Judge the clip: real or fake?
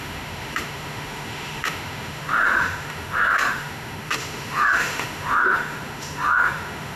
fake